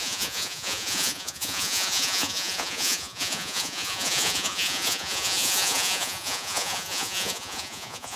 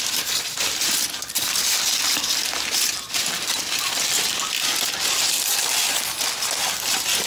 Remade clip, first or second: first